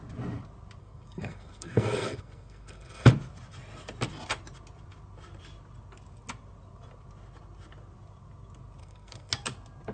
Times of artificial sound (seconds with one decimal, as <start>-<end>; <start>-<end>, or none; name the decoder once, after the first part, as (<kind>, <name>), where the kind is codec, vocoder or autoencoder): 0.8-3.1 (codec, SNAC); 8.8-9.3